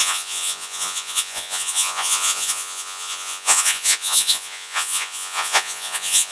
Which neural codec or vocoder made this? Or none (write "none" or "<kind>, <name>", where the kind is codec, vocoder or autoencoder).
vocoder, Vocos